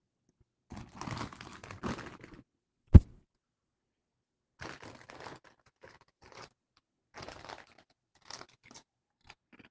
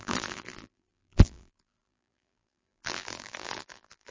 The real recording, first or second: first